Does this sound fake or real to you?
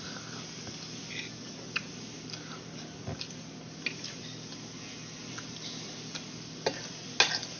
real